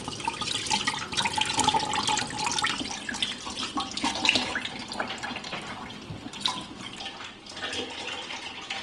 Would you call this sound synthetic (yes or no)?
no